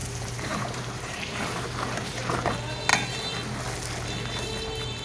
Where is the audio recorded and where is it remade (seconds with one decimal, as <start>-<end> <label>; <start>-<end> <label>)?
0.0-2.5 remade; 2.5-5.0 recorded